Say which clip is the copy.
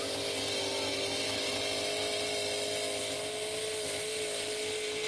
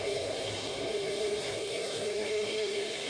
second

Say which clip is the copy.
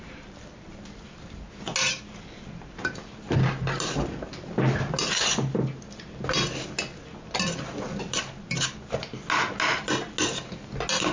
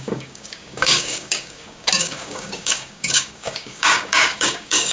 second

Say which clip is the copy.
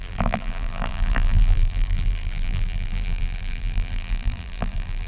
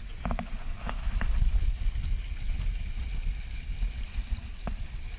first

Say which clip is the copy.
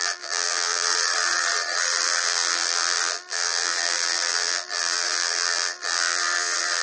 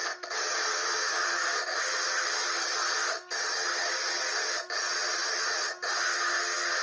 first